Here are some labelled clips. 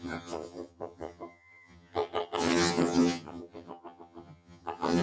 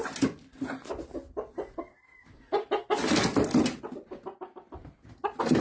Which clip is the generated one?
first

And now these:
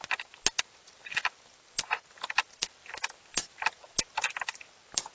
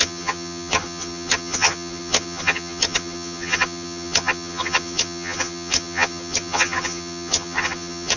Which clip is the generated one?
second